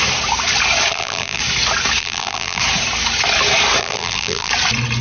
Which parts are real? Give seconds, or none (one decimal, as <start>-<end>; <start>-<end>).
0.0-0.9; 1.4-2.0; 2.6-3.8; 4.5-5.0